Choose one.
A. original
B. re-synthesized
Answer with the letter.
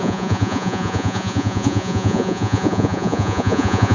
B